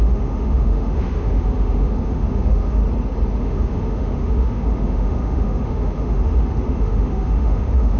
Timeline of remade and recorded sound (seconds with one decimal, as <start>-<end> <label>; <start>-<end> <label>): 0.0-2.8 remade; 2.8-3.4 recorded; 3.4-8.0 remade